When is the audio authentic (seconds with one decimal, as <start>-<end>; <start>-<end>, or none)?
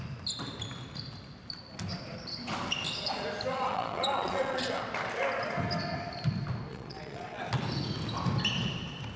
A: 0.0-3.5; 4.8-6.7; 7.4-9.2